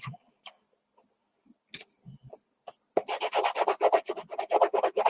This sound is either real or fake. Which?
real